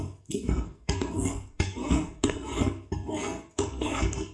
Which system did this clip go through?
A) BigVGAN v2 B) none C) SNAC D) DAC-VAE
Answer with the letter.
C